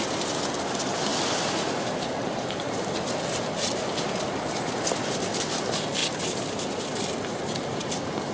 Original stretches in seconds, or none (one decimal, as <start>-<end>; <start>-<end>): 0.0-8.3